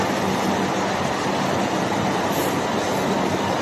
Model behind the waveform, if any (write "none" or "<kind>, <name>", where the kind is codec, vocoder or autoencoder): none